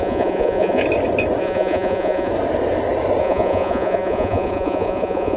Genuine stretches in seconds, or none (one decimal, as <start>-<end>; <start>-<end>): 0.8-1.4; 2.3-3.2

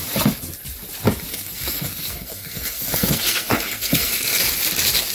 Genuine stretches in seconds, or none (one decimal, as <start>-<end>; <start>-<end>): 0.0-1.3; 4.4-5.1